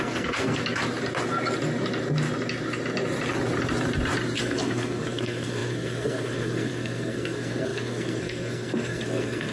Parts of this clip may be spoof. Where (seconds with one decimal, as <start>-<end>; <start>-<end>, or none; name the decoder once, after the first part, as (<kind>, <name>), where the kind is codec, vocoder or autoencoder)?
0.0-0.6 (codec, SNAC); 4.4-9.5